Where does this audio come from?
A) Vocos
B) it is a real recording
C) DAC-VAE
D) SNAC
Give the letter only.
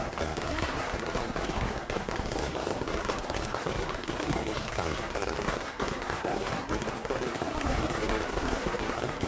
D